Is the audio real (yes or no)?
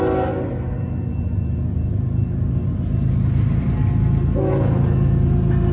yes